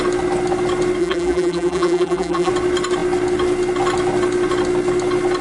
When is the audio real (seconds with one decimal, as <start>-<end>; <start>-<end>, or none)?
0.0-1.0; 2.5-5.4